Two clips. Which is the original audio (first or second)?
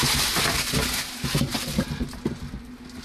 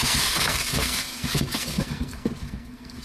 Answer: first